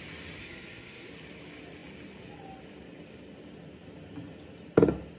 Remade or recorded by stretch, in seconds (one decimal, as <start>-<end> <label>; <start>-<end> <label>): 0.0-0.4 recorded; 0.4-1.1 remade; 1.1-5.2 recorded